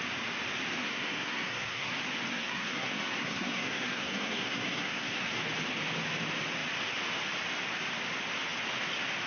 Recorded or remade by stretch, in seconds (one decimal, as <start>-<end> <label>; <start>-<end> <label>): 0.0-0.8 recorded; 0.8-1.9 remade; 1.9-2.3 recorded; 2.3-5.4 remade; 5.4-9.3 recorded

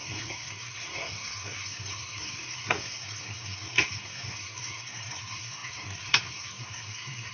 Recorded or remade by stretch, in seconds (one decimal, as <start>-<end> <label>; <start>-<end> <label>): 0.0-7.3 remade

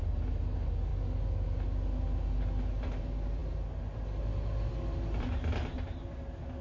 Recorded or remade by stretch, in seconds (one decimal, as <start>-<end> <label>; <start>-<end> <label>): 0.0-6.6 recorded